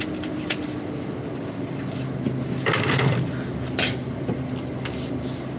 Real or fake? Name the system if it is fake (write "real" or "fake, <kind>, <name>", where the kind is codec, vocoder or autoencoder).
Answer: real